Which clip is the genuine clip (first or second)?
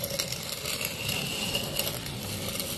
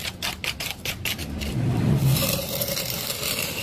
first